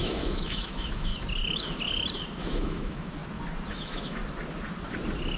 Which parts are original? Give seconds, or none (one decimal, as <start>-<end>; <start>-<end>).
1.1-2.4; 3.2-3.7; 4.2-5.4